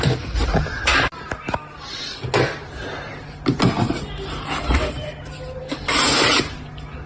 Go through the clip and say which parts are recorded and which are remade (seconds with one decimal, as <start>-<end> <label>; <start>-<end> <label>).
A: 0.0-7.1 recorded